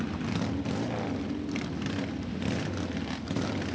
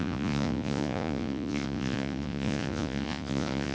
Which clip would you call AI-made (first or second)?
second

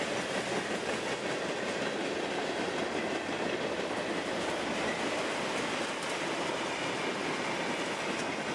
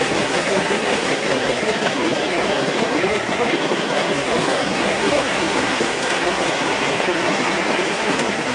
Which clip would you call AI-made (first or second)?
second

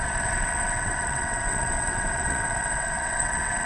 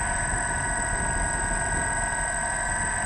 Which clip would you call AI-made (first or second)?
first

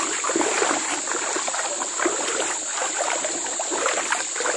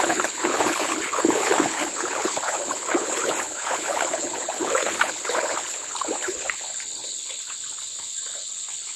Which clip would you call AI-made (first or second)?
second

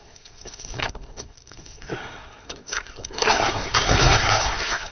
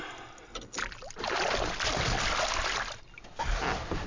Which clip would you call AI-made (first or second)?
first